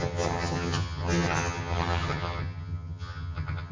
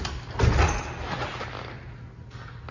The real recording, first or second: second